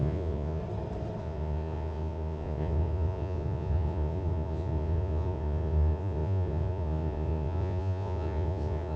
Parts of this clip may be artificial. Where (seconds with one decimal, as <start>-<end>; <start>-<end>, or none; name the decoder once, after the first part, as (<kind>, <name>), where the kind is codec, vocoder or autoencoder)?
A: 0.0-0.6 (vocoder, Vocos); 1.2-9.0